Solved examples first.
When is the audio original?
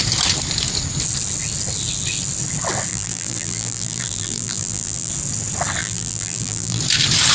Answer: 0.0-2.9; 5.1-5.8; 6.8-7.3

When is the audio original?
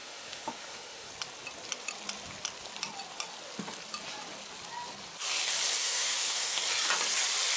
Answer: 1.1-5.8; 6.6-7.6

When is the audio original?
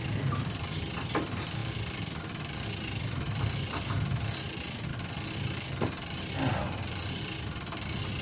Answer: 0.0-8.2